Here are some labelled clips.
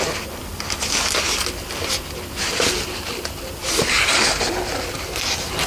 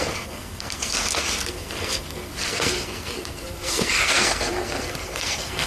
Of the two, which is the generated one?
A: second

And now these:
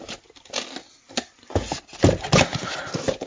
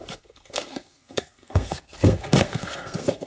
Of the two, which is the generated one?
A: second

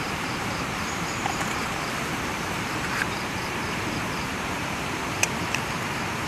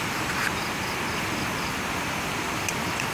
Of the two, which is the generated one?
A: first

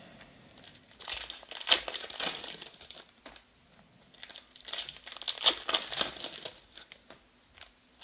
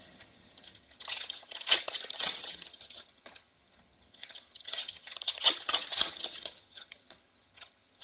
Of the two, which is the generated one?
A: second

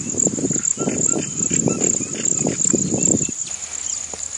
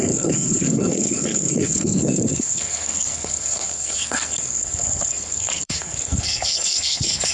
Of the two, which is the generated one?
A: second